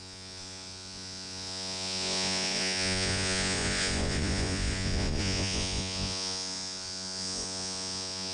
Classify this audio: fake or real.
fake